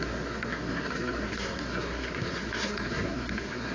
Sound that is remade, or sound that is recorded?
remade